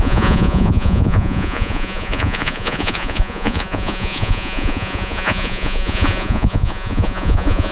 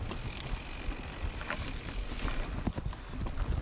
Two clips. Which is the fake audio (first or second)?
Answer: first